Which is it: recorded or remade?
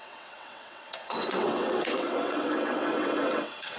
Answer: remade